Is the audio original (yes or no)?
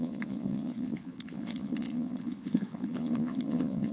no